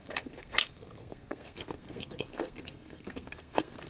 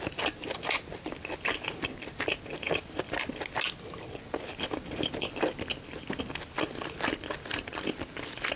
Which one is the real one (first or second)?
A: second